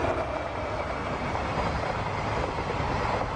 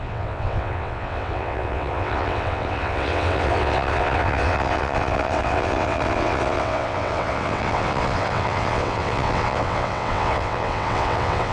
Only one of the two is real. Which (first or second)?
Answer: first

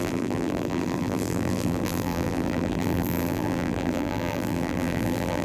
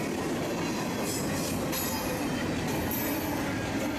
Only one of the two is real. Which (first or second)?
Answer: second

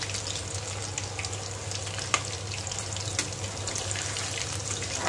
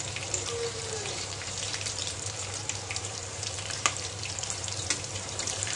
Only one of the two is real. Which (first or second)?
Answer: first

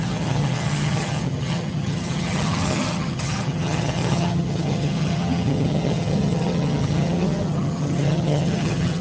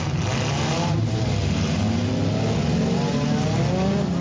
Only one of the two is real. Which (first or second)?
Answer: second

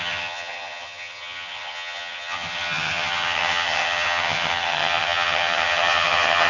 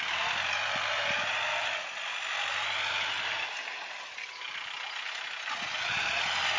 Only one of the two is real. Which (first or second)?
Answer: second